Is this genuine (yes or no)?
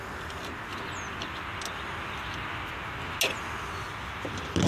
yes